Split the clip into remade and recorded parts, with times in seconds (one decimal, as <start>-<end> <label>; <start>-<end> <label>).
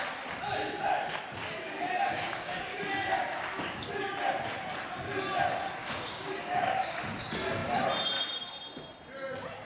0.0-1.4 recorded; 1.4-4.0 remade; 4.0-5.8 recorded; 5.8-7.0 remade; 7.0-9.6 recorded